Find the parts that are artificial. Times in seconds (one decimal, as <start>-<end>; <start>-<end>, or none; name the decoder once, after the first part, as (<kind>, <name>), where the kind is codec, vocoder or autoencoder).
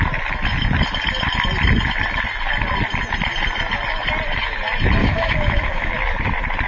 5.0-5.9 (autoencoder, DAC-VAE)